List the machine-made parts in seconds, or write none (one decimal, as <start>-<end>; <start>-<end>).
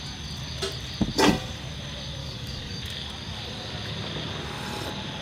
2.2-2.8